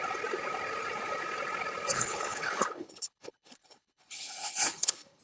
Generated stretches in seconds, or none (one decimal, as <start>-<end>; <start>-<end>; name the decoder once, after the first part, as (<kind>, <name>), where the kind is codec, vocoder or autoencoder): 1.9-5.2 (codec, HILCodec)